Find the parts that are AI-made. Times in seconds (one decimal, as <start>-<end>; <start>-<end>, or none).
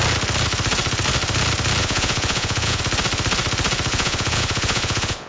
1.8-2.8; 3.9-5.3